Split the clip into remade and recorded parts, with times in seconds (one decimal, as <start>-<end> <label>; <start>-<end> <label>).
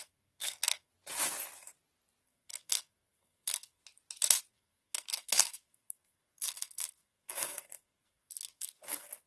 0.0-0.9 remade; 0.9-2.2 recorded; 2.2-3.8 remade; 3.8-4.5 recorded; 4.5-9.3 remade